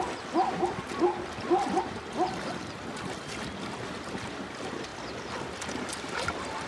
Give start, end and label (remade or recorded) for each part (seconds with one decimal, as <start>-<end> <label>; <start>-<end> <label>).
0.0-6.7 recorded